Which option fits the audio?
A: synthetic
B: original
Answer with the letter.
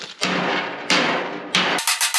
B